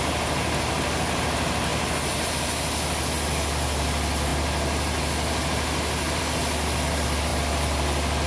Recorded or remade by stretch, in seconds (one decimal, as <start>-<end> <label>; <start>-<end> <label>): 0.0-8.3 recorded